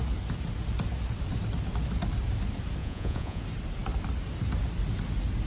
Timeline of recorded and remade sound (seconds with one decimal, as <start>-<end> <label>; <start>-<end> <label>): 0.0-2.8 recorded; 2.8-3.4 remade; 3.4-5.5 recorded